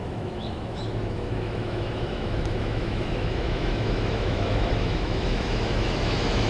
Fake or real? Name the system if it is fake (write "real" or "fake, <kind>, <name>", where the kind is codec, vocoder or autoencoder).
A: fake, autoencoder, DAC-VAE